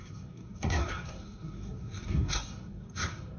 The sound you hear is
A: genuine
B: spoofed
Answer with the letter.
B